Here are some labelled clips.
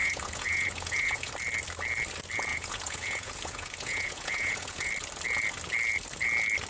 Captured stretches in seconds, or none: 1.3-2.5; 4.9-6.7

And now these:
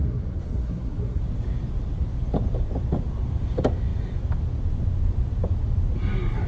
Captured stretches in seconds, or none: 1.2-6.5

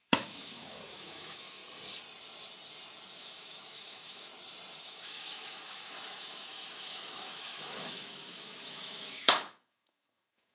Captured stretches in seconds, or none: 1.6-3.2; 4.3-4.8

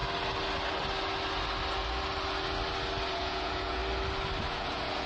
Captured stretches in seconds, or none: 0.0-3.1; 3.8-4.5

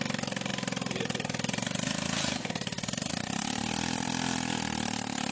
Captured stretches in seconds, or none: 0.0-0.5; 3.1-5.3